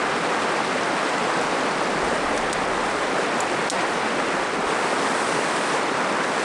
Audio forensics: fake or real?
real